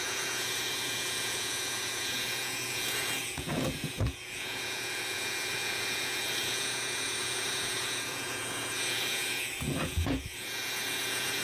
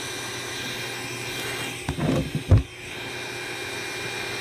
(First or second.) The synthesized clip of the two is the first